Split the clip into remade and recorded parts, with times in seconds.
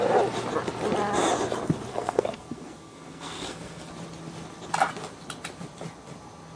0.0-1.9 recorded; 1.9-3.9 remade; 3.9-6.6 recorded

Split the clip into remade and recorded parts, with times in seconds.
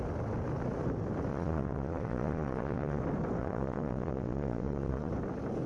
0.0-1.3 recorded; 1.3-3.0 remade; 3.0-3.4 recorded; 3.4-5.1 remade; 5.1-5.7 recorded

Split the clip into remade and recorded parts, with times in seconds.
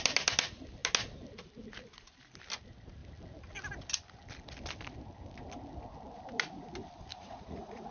0.0-7.1 recorded; 7.1-7.9 remade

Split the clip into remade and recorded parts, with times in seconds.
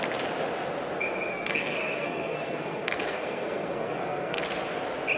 0.0-1.3 recorded; 1.3-4.4 remade; 4.4-5.2 recorded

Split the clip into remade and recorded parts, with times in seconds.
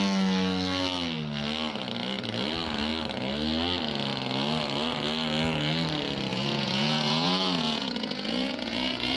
0.0-6.3 recorded; 6.3-9.2 remade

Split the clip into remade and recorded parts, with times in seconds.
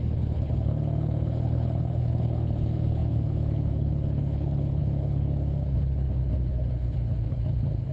0.0-7.9 remade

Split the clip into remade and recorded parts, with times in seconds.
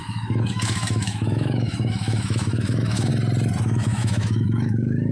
0.0-3.1 remade; 3.1-3.6 recorded; 3.6-5.1 remade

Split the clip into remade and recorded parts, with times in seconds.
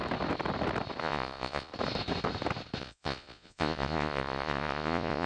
0.0-1.0 recorded; 1.0-1.7 remade; 1.7-2.8 recorded; 2.8-5.3 remade